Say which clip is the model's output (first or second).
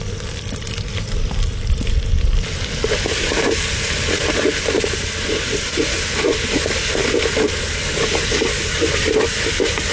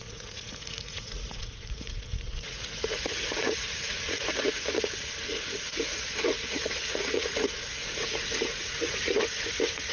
second